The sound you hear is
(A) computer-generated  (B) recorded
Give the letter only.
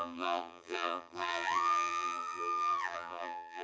A